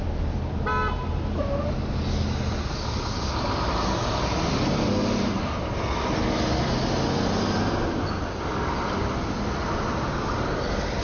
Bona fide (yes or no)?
yes